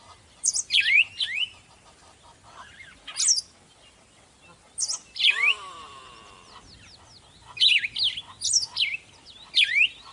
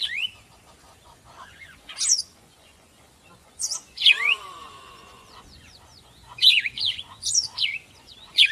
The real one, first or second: first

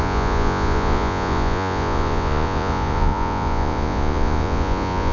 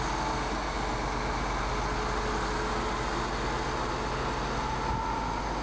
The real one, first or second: second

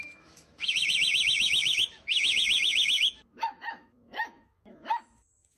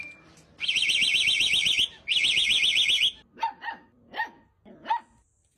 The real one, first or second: second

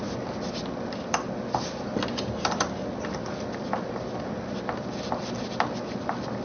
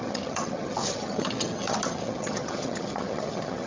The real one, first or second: first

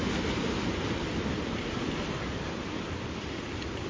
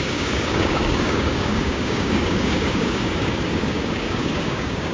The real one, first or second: first